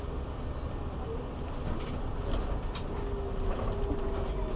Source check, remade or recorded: recorded